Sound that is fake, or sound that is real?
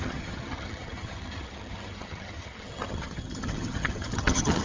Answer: fake